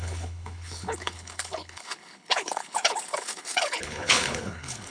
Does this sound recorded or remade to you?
remade